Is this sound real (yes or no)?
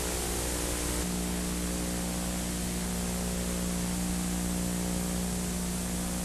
yes